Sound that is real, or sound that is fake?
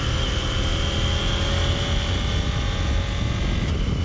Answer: real